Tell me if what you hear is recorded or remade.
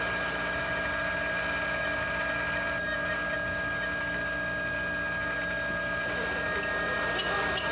recorded